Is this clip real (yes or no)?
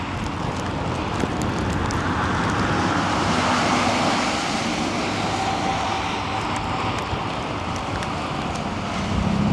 yes